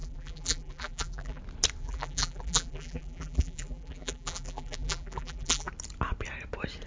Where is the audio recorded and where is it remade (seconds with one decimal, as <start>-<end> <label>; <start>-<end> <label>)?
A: 0.0-1.4 remade; 1.4-1.8 recorded; 1.8-5.7 remade; 5.7-6.9 recorded